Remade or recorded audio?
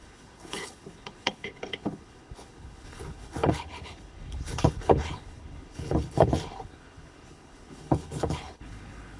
remade